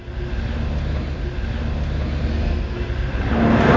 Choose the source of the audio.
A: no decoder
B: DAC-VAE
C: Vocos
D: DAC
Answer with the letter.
A